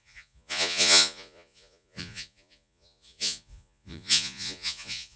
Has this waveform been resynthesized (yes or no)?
yes